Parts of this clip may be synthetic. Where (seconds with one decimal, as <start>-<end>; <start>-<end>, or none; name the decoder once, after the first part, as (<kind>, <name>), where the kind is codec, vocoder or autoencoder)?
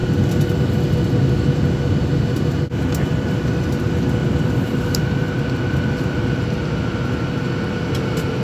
4.2-5.2 (vocoder, BigVGAN v2)